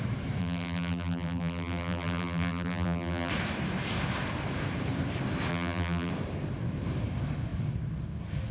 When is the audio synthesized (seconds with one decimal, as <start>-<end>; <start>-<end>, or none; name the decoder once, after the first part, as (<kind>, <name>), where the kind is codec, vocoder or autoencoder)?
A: 0.4-3.3 (vocoder, BigVGAN v2); 5.5-6.1